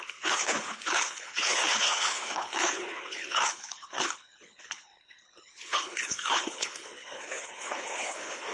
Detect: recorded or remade remade